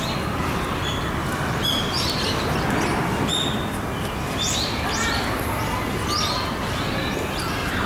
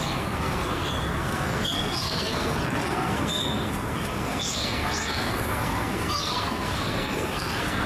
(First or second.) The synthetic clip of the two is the second